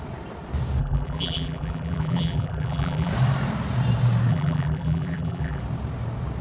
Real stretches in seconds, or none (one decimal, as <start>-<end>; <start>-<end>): 0.0-0.8; 3.1-4.3; 5.6-6.4